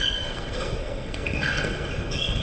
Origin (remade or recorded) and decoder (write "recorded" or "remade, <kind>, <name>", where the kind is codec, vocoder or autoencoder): remade, codec, SNAC